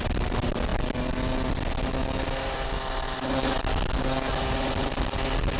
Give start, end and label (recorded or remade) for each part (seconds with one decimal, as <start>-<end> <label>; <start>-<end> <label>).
0.0-5.6 recorded